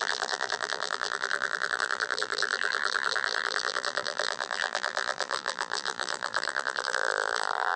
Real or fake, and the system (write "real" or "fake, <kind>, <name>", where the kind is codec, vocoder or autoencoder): fake, vocoder, BigVGAN v2